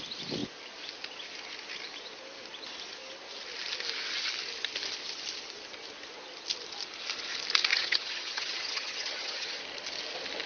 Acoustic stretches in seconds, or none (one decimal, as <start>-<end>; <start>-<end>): 0.0-7.7; 9.6-10.5